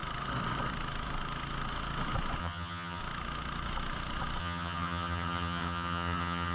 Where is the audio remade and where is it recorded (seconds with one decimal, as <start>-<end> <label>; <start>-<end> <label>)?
0.0-2.4 recorded; 2.4-3.0 remade; 3.0-4.4 recorded; 4.4-6.5 remade